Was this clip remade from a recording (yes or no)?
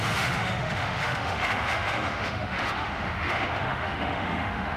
yes